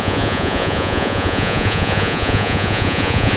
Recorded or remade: remade